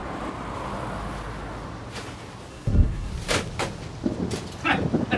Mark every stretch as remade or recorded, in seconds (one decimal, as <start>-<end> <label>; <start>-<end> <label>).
0.0-2.5 recorded; 2.5-3.1 remade; 3.1-5.2 recorded